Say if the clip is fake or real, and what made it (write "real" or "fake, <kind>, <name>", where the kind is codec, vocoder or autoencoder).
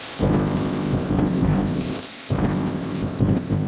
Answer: fake, codec, ZipCodec